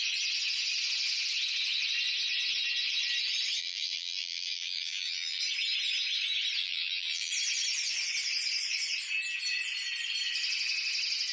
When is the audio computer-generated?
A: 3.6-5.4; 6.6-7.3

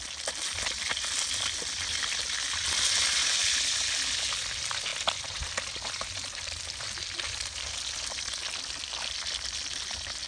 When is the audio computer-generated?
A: none

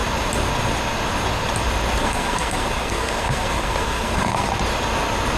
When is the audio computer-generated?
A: 2.0-4.5

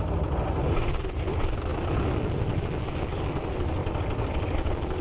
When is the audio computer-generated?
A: none